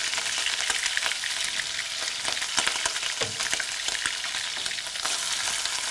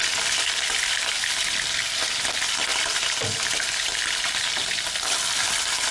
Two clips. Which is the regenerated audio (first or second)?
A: second